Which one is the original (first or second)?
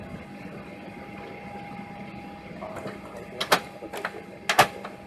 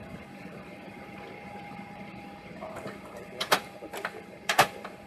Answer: first